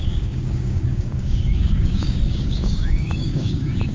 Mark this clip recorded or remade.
remade